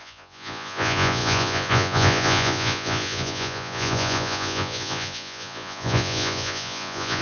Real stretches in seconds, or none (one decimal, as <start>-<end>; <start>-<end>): none